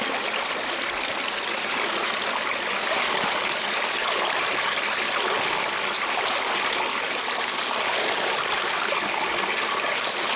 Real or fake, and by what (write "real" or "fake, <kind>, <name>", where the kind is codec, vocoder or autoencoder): real